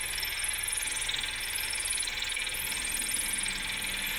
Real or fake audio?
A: real